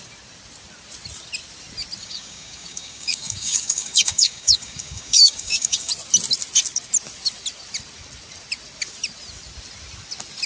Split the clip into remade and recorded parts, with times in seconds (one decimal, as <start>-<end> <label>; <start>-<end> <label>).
0.0-2.0 recorded; 2.0-5.9 remade; 5.9-10.5 recorded